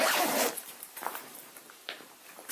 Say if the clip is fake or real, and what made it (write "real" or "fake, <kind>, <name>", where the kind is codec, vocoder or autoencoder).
fake, vocoder, BigVGAN v2